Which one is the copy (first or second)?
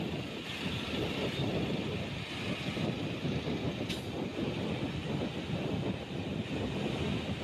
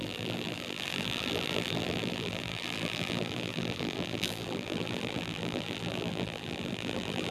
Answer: second